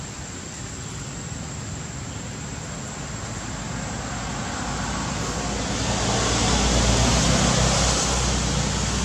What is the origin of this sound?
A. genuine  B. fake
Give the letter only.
A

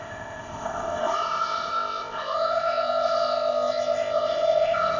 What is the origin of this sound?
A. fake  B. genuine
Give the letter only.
A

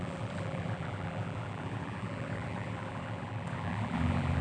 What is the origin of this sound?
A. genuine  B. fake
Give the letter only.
B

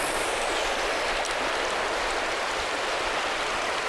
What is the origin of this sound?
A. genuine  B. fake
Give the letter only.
A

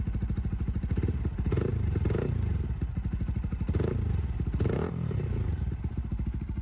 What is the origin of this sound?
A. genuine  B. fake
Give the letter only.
B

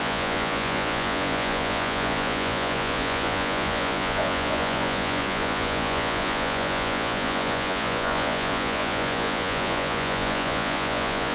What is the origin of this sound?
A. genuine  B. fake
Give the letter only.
B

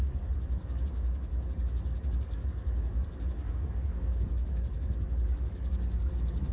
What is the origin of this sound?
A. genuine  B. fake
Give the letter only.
B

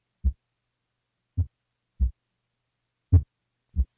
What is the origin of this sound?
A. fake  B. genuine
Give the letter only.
B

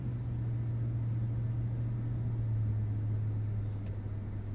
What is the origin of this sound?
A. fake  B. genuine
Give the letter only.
B